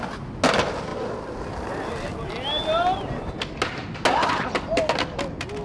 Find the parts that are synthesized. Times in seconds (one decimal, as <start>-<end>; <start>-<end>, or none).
none